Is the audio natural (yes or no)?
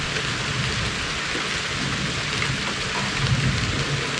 yes